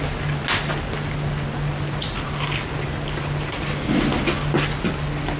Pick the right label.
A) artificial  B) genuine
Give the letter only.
B